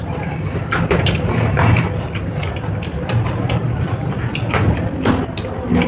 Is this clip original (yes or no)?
yes